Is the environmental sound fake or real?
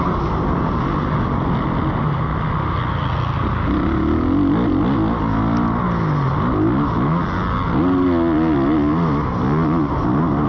real